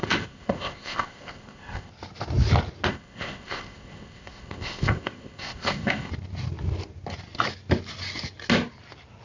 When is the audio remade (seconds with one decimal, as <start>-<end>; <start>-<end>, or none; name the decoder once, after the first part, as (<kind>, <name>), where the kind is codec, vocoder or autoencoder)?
0.0-1.9 (codec, ZipCodec); 2.9-6.1